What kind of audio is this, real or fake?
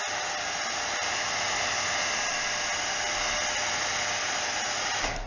real